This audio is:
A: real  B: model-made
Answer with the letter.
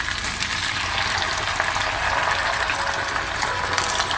A